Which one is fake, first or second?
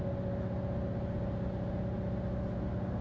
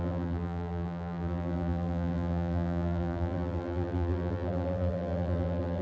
second